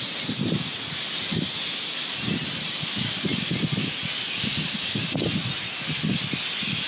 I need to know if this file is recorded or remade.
recorded